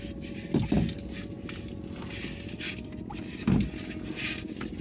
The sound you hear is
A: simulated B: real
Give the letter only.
B